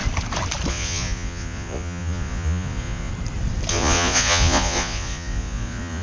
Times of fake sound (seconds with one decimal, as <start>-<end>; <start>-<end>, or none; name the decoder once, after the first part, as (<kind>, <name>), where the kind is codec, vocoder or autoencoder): 0.7-3.1 (vocoder, Vocos); 3.7-6.0